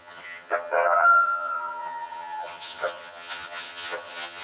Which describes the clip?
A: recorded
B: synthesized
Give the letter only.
B